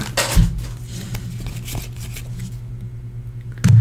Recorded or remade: recorded